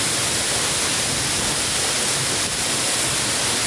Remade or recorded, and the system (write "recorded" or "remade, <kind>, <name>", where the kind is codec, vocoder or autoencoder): recorded